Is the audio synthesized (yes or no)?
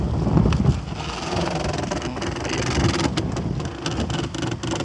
no